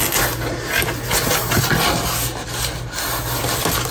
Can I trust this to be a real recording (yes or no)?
yes